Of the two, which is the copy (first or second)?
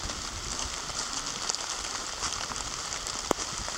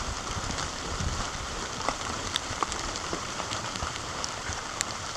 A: second